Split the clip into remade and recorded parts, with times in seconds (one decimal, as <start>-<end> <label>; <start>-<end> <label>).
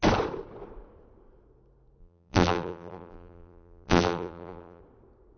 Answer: 0.0-2.0 recorded; 2.0-4.8 remade; 4.8-5.4 recorded